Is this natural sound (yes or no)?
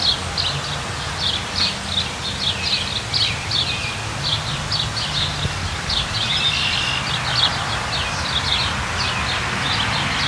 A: yes